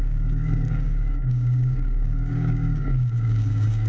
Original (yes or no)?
no